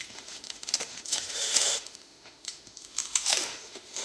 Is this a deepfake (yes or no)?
yes